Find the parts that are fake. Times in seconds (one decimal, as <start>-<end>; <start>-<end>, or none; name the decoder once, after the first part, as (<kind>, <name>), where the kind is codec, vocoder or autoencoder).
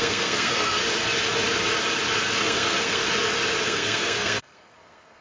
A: 0.0-0.8 (codec, SNAC); 2.4-3.0; 3.6-5.2